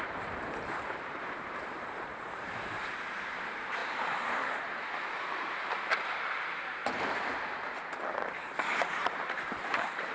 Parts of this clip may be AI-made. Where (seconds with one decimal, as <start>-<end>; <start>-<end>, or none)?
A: 0.0-6.8; 8.1-10.1